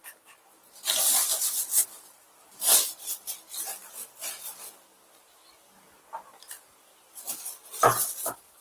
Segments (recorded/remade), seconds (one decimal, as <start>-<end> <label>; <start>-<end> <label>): 0.0-8.6 recorded

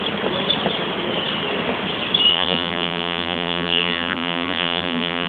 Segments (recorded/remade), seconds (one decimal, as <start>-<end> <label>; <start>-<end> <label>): 0.0-2.3 recorded; 2.3-5.3 remade

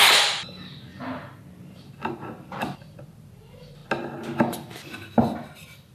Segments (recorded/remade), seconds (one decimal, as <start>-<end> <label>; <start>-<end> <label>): 0.0-3.8 remade; 3.8-5.9 recorded

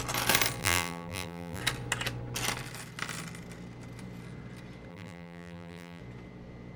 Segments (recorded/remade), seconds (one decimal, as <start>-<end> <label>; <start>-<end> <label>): 0.0-0.6 recorded; 0.6-1.6 remade; 1.6-4.9 recorded; 4.9-6.0 remade; 6.0-6.8 recorded

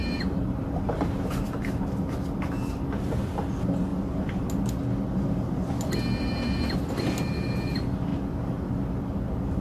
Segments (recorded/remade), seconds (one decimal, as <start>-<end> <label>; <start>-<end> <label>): 0.0-1.6 remade; 1.6-9.6 recorded

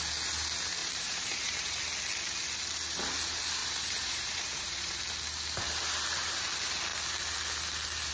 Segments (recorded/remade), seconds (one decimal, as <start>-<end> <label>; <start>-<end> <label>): 0.0-0.8 recorded; 0.8-1.8 remade; 1.8-3.6 recorded; 3.6-5.0 remade; 5.0-8.1 recorded